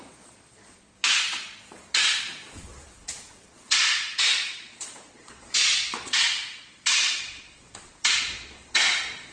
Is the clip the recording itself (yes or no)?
no